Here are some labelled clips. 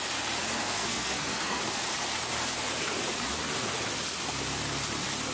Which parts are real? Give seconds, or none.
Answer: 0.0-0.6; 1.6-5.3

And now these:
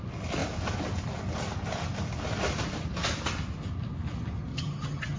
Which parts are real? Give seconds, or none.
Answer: 0.0-4.5